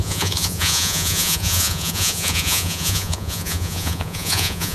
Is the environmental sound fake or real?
fake